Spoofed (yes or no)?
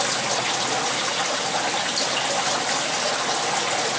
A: no